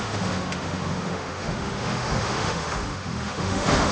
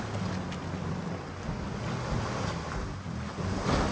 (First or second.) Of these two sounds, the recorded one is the second